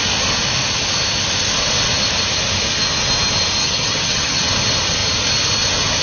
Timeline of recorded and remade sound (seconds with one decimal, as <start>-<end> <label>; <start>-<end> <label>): 0.0-3.6 recorded; 3.6-4.5 remade; 4.5-6.0 recorded